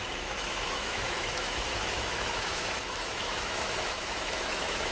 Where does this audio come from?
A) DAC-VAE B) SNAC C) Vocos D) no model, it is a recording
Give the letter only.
A